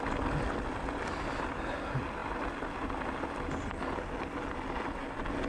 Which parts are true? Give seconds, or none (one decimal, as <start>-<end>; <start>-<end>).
0.0-5.5